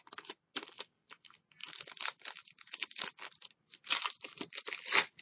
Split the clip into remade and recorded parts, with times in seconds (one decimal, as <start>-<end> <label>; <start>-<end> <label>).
0.0-5.2 recorded